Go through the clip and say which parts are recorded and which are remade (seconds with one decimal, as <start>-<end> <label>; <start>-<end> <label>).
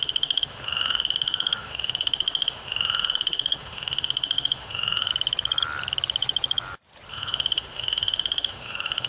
0.0-5.1 remade; 5.1-7.1 recorded; 7.1-9.1 remade